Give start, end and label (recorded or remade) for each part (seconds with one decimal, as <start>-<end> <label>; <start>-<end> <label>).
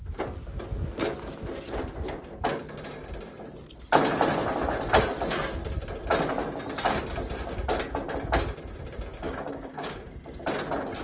0.0-9.1 recorded; 9.1-10.2 remade; 10.2-11.0 recorded